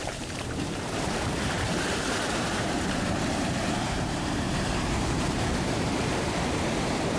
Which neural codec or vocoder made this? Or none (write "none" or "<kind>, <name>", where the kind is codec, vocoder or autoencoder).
vocoder, BigVGAN v2